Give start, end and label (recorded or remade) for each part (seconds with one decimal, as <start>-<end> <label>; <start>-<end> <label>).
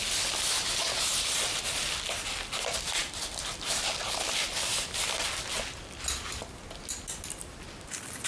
0.0-3.0 recorded; 3.0-4.7 remade; 4.7-8.3 recorded